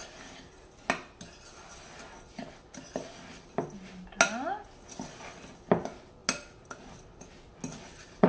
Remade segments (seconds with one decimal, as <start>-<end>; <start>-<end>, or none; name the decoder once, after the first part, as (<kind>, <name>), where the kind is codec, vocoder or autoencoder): none